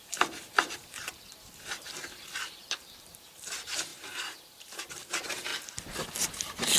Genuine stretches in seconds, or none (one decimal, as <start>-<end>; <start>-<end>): 5.5-6.2